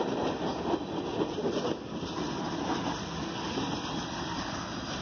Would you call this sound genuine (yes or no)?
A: no